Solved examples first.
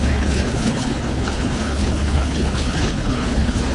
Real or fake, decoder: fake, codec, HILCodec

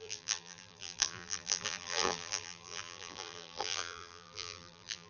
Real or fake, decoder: fake, vocoder, BigVGAN v2